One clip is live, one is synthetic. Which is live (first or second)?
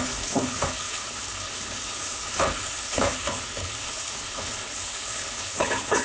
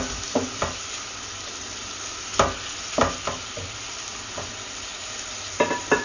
second